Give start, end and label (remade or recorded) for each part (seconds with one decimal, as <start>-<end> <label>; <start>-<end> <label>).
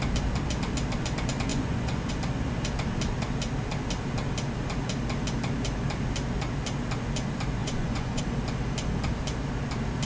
0.0-1.5 recorded; 1.5-2.1 remade; 2.1-7.6 recorded; 7.6-8.2 remade; 8.2-10.1 recorded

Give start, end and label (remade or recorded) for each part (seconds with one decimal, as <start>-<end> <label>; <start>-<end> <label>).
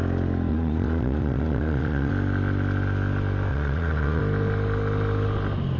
0.0-0.5 recorded; 0.5-2.1 remade; 2.1-3.5 recorded; 3.5-4.2 remade; 4.2-5.8 recorded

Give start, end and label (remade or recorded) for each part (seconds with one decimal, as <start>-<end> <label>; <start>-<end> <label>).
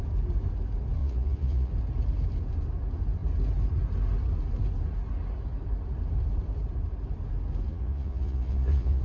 0.0-1.0 recorded; 1.0-1.7 remade; 1.7-7.7 recorded; 7.7-9.0 remade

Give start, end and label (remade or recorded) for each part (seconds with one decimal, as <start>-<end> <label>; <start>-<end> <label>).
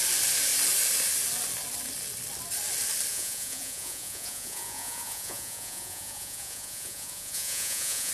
0.0-3.1 recorded; 3.1-8.1 remade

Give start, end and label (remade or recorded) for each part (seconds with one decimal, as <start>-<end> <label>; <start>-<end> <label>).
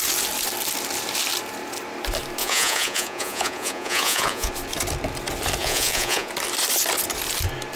0.0-2.4 recorded; 2.4-4.5 remade; 4.5-5.6 recorded; 5.6-6.3 remade; 6.3-7.8 recorded